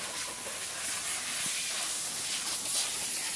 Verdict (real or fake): real